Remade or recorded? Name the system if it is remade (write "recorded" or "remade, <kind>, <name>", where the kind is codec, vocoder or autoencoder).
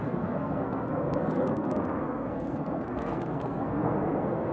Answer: remade, codec, SNAC